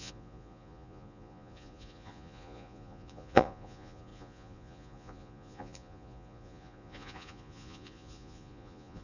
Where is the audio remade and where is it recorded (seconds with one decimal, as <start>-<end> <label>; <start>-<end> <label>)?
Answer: 0.0-9.0 remade